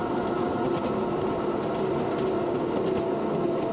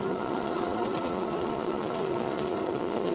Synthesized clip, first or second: second